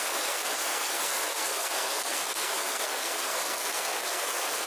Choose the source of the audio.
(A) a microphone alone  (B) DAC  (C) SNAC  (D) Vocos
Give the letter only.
C